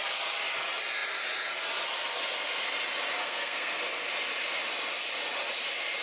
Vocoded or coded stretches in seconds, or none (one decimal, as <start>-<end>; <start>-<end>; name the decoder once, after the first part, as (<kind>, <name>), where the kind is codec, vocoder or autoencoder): 3.2-3.8 (codec, SNAC)